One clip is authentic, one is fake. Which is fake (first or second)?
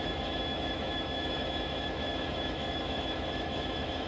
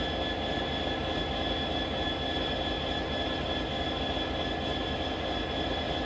first